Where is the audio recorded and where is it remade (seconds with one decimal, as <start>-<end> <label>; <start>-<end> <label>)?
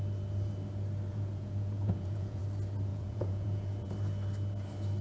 0.0-1.1 recorded; 1.1-2.4 remade; 2.4-2.9 recorded; 2.9-3.9 remade; 3.9-5.0 recorded